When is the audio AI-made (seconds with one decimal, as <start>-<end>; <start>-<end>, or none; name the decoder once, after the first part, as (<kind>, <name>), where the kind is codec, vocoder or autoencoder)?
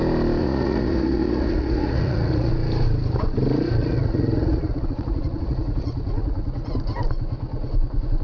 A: 0.4-2.5 (vocoder, Vocos); 3.8-6.5